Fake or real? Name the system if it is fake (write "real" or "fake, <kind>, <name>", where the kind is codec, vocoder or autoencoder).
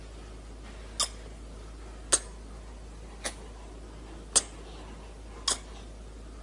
real